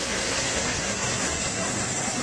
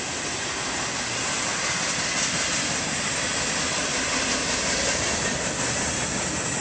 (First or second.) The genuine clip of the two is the second